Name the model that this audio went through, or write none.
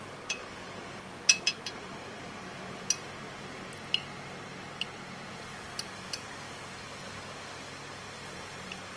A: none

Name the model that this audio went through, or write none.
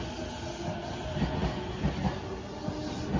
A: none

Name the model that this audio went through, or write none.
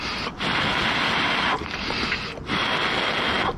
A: none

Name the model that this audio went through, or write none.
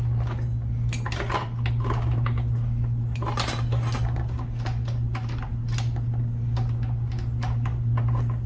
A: none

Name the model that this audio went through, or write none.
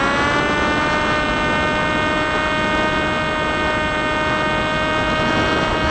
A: none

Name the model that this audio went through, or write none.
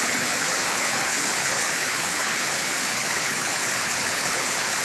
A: codec, HILCodec